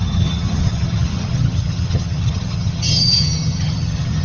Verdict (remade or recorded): remade